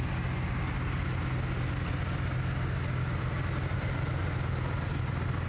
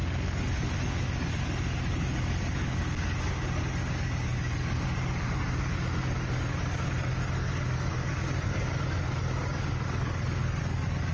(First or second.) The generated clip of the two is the second